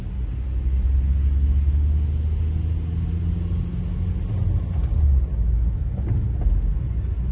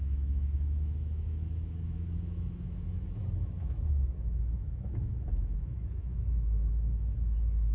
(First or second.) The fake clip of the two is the second